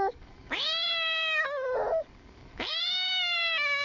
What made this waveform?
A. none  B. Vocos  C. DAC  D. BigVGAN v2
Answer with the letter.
C